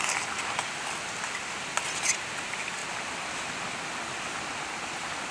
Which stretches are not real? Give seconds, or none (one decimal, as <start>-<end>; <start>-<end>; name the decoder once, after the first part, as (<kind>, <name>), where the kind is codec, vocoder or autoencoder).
none